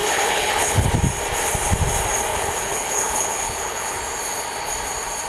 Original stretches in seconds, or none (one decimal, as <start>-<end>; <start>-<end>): 0.9-2.3; 4.0-5.3